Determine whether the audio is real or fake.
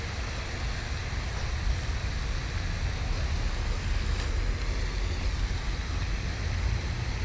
real